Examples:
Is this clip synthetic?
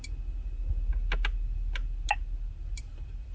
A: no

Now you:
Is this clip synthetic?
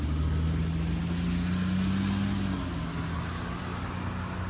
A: no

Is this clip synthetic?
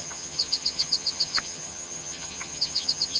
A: yes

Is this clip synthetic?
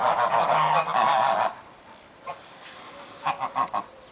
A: no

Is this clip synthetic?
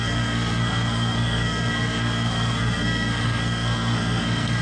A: yes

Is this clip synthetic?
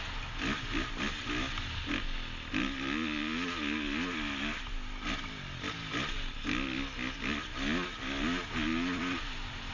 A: no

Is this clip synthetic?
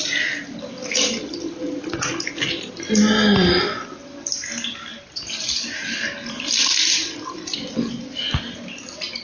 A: no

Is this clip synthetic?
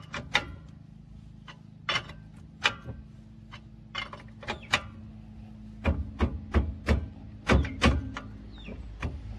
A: no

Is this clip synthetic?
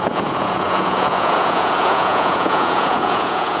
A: yes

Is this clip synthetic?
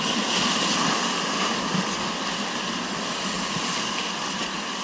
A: no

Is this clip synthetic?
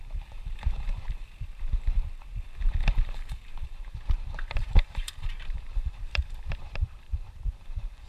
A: yes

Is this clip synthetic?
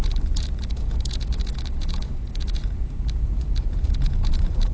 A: yes